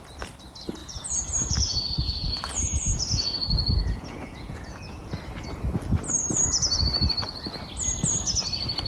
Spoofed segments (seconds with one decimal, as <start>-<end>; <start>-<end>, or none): 0.8-5.1